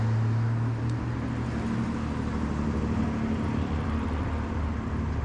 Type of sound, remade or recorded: recorded